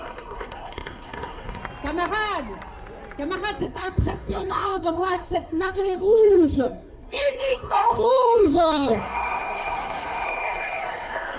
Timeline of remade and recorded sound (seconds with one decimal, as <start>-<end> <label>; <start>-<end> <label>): 0.0-1.6 remade; 1.6-3.6 recorded; 3.6-11.4 remade